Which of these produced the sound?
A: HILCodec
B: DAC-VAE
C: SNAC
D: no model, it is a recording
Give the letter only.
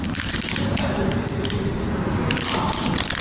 D